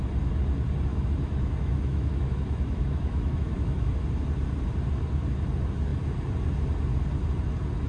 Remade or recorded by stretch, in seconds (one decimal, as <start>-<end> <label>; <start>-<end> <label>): 0.0-0.9 recorded; 0.9-3.9 remade; 3.9-7.9 recorded